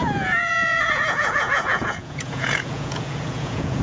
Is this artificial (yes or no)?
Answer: yes